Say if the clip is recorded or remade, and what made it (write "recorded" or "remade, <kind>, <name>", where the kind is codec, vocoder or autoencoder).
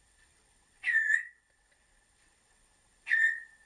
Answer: remade, vocoder, WaveNeXt